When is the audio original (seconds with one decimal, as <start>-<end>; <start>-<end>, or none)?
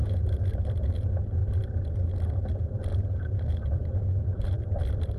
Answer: 0.0-4.3; 4.8-5.2